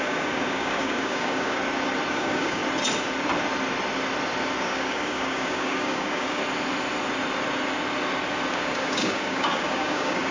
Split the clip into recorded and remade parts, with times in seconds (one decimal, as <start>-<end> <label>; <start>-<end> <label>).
0.0-1.6 remade; 1.6-2.1 recorded; 2.1-2.6 remade; 2.6-4.6 recorded; 4.6-6.4 remade; 6.4-8.5 recorded; 8.5-10.3 remade